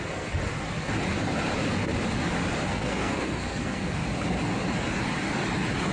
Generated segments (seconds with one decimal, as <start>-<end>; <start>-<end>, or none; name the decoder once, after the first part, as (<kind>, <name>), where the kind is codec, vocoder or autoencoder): 0.0-0.4 (codec, SNAC); 2.7-4.0